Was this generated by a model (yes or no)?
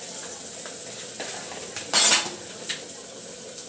no